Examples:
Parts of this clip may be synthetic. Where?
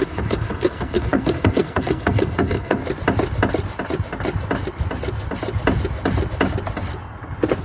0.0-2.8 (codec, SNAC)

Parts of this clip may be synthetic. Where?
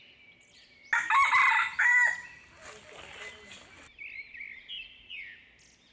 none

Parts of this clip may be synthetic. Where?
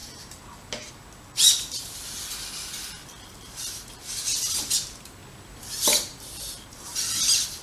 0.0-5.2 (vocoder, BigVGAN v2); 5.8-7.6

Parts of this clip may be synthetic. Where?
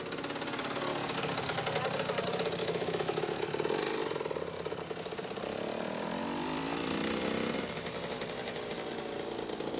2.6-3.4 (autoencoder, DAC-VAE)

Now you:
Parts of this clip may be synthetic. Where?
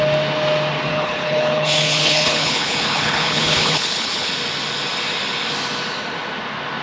0.9-4.3 (codec, HILCodec)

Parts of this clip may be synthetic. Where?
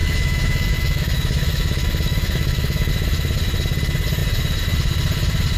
0.0-2.9 (autoencoder, DAC-VAE)